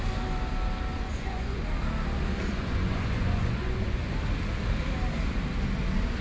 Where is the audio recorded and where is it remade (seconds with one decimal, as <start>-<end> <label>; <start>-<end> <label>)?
0.0-0.9 recorded; 0.9-1.6 remade; 1.6-2.5 recorded; 2.5-4.1 remade; 4.1-6.2 recorded